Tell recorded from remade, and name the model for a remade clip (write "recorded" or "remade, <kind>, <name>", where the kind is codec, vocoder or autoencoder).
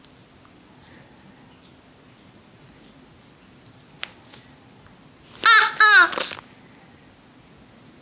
recorded